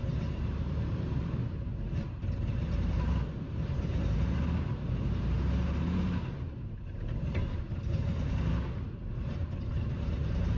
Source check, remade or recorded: remade